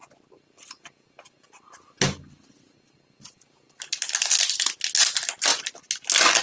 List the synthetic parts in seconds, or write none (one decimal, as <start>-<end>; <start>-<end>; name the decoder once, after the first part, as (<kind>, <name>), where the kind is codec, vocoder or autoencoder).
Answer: none